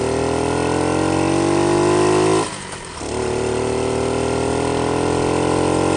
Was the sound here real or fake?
real